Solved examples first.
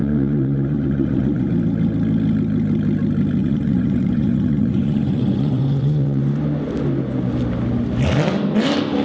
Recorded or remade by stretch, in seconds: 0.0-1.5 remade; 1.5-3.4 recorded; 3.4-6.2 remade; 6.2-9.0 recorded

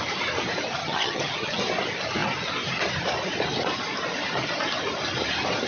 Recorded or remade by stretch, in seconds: 0.0-0.8 recorded; 0.8-1.6 remade; 1.6-5.7 recorded

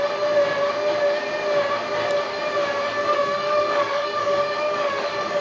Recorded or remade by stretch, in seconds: 0.0-3.0 recorded; 3.0-5.4 remade

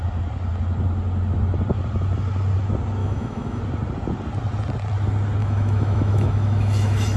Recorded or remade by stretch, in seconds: 0.0-3.0 recorded; 3.0-3.6 remade; 3.6-5.4 recorded; 5.4-7.2 remade

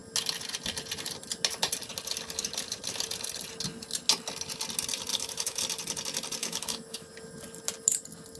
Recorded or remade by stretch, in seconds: 0.0-5.1 recorded; 5.1-5.6 remade; 5.6-6.4 recorded; 6.4-7.1 remade; 7.1-8.4 recorded

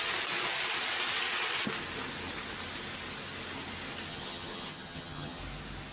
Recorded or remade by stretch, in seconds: 0.0-4.1 recorded; 4.1-5.4 remade; 5.4-5.9 recorded

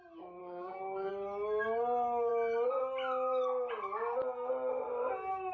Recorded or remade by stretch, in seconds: 0.0-0.4 recorded; 0.4-1.1 remade; 1.1-5.5 recorded

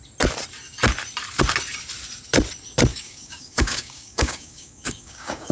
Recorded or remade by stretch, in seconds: 0.0-2.9 recorded; 2.9-5.5 remade